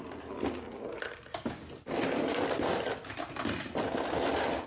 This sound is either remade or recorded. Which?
recorded